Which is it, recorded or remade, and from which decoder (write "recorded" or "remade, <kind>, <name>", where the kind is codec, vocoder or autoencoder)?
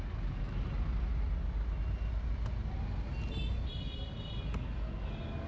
recorded